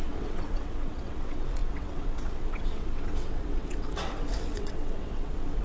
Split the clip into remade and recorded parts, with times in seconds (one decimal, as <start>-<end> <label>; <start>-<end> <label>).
0.0-5.6 remade